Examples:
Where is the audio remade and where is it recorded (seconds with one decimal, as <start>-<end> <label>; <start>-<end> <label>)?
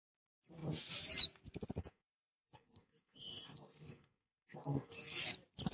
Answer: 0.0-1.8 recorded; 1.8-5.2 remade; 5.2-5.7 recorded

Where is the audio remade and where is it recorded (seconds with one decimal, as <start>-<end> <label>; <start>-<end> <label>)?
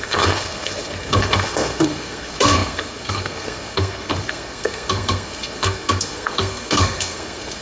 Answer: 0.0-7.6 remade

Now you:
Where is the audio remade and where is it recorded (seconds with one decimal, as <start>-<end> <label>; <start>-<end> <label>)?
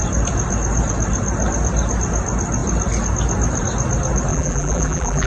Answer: 0.0-4.3 recorded; 4.3-5.3 remade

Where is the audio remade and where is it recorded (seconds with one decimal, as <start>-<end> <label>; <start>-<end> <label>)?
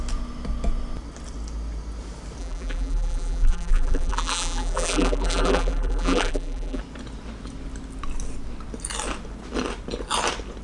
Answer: 0.0-2.4 recorded; 2.4-6.8 remade; 6.8-10.6 recorded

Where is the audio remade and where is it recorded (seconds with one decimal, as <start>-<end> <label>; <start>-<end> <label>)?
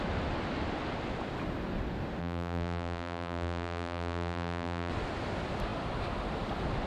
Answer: 0.0-2.2 recorded; 2.2-4.9 remade; 4.9-6.9 recorded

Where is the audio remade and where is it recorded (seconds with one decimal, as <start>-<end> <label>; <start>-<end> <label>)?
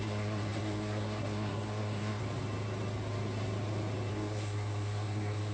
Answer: 0.0-2.2 remade; 2.2-4.1 recorded; 4.1-5.5 remade